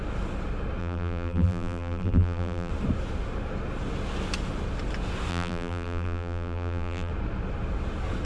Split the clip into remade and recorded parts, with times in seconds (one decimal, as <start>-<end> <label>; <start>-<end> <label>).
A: 0.0-0.8 recorded; 0.8-2.7 remade; 2.7-5.3 recorded; 5.3-7.1 remade; 7.1-8.3 recorded